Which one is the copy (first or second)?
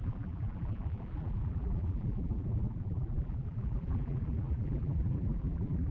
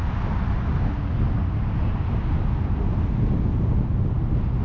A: first